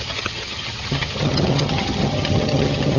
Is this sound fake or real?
fake